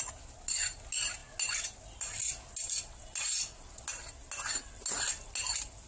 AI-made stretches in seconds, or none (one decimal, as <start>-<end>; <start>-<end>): none